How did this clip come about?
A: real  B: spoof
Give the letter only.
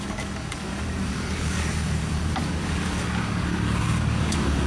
B